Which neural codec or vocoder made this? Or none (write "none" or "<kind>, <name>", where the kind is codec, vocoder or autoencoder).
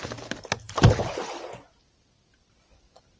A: none